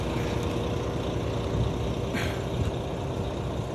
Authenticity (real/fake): real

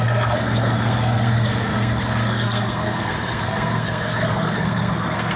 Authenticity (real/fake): fake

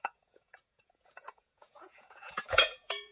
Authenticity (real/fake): fake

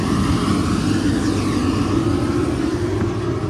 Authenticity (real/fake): real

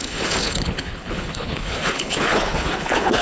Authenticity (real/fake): fake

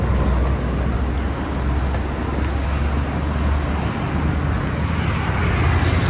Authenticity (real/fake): real